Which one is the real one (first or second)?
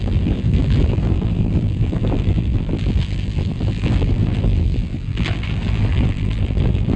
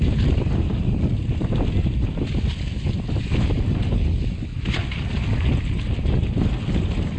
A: second